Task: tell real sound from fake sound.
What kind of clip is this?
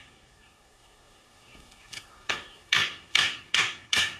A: fake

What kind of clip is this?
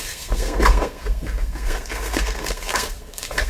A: fake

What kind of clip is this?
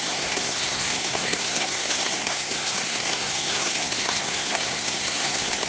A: fake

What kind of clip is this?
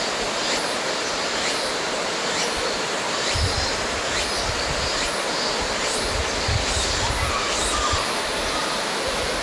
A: real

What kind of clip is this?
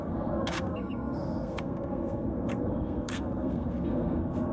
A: fake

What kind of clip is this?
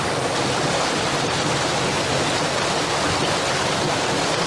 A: real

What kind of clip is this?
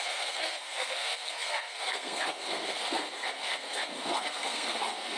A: fake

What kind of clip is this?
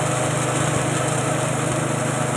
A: real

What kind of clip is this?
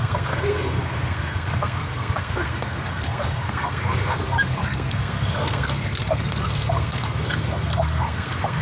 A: fake